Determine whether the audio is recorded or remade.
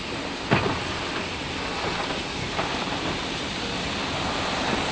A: recorded